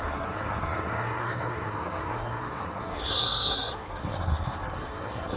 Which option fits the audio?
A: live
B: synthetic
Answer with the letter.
B